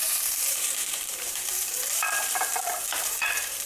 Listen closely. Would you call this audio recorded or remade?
remade